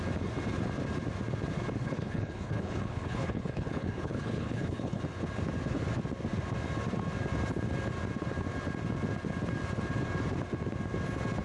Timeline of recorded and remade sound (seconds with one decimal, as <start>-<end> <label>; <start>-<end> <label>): 0.0-1.8 recorded; 1.8-5.0 remade; 5.0-11.4 recorded